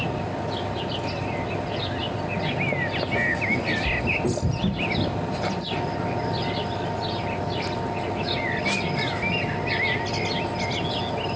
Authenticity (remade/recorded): recorded